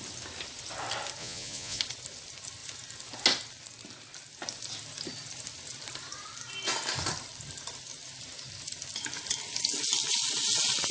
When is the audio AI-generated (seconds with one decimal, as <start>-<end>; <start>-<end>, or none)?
1.2-1.8